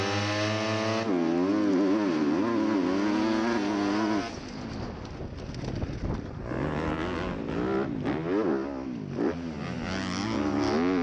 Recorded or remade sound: recorded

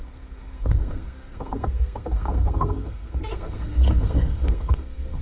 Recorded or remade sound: remade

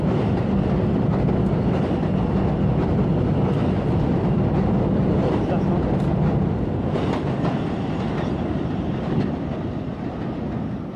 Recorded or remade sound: recorded